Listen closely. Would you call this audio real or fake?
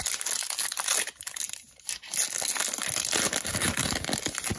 real